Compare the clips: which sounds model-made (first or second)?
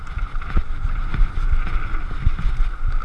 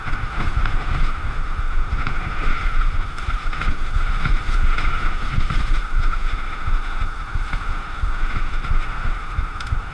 second